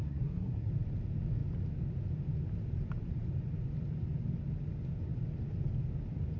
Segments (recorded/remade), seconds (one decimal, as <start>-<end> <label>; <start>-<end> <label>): 0.0-0.7 remade; 0.7-6.4 recorded

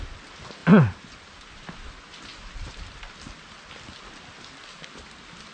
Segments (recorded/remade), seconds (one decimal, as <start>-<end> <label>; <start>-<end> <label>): 0.0-0.6 recorded; 0.6-1.9 remade; 1.9-5.5 recorded

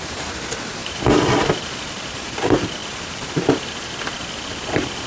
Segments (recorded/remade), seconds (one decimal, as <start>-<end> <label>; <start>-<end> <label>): 0.0-5.1 remade

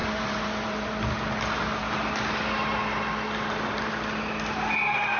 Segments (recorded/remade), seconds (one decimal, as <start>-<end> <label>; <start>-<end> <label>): 0.0-0.9 remade; 0.9-5.2 recorded